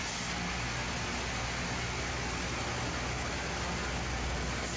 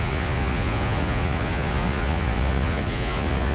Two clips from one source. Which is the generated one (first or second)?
second